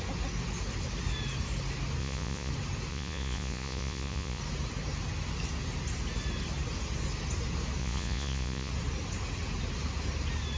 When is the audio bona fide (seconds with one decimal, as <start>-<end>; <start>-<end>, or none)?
0.0-2.0; 2.5-2.9; 4.4-7.8; 8.7-10.6